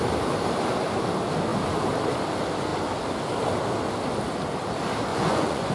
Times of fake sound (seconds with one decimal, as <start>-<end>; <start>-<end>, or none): 5.1-5.7

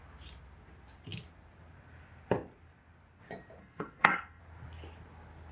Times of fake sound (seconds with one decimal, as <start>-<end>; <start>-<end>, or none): 3.6-4.4

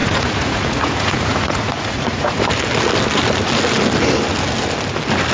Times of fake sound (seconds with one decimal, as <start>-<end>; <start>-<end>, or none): 0.0-2.4